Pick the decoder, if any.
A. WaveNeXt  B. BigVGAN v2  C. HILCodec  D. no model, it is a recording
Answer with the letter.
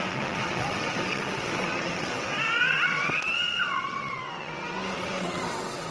A